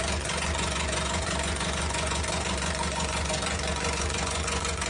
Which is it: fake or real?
fake